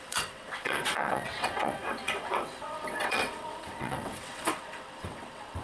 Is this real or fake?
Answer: fake